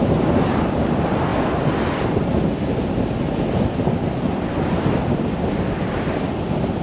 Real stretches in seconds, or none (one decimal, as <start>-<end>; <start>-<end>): 0.0-6.8